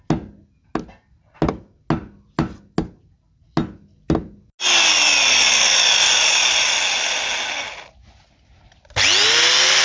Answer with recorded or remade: recorded